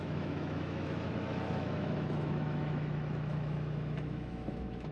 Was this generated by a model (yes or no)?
yes